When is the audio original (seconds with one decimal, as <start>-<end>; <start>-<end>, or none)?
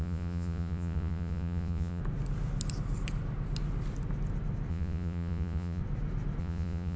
2.0-4.7; 5.8-6.4